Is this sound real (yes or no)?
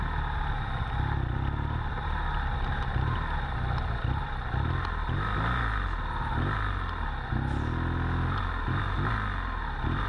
yes